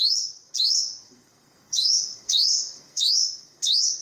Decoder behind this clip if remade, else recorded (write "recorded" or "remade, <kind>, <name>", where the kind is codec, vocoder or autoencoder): remade, codec, SNAC